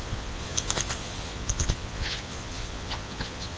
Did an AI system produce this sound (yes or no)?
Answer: yes